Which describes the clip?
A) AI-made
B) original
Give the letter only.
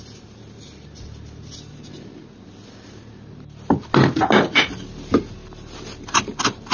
B